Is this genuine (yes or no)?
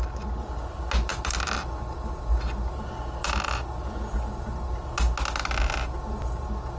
yes